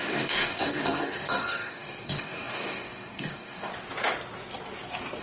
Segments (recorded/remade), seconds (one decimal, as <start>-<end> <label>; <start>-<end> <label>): 0.0-3.7 remade; 3.7-5.2 recorded